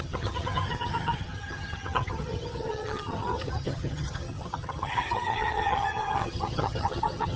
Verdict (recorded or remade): remade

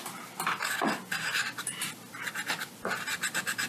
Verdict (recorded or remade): remade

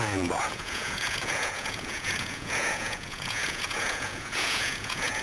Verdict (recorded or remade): remade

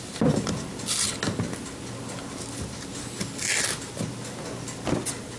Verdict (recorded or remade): recorded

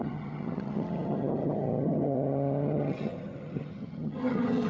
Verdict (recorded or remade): remade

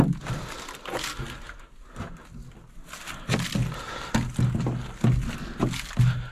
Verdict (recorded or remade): recorded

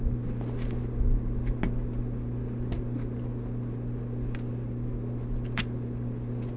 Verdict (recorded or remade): recorded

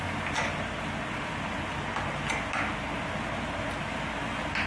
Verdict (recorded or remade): recorded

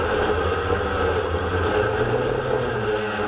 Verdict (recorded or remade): recorded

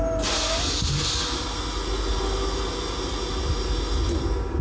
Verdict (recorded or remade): recorded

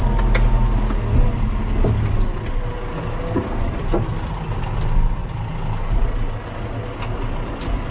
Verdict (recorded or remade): recorded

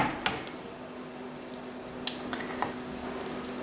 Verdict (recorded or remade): recorded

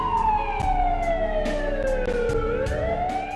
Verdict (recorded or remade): recorded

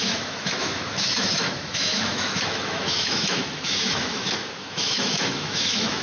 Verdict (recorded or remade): remade